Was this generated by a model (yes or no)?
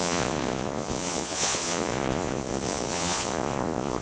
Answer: yes